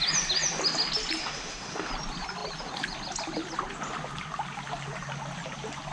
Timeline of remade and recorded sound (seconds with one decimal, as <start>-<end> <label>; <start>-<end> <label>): 0.0-1.2 recorded; 1.2-1.9 remade; 1.9-5.9 recorded